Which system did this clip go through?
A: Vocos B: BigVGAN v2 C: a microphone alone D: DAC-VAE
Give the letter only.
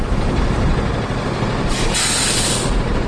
C